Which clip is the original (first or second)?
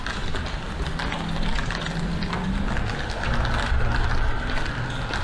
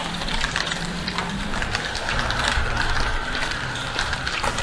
first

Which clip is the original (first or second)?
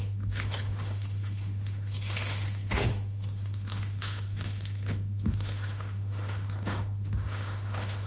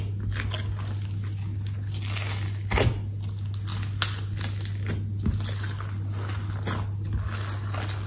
second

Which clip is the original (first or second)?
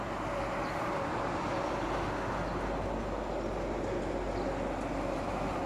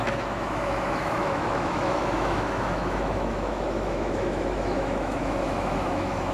first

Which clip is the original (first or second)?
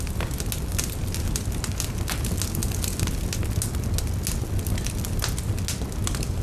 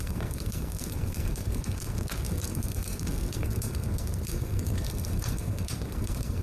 first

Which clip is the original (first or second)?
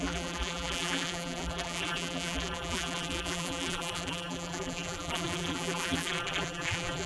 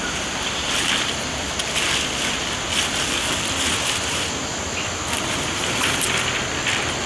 second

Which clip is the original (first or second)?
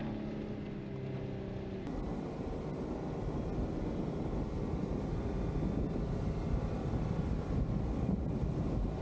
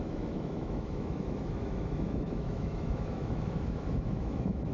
first